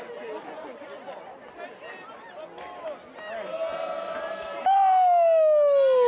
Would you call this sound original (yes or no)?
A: yes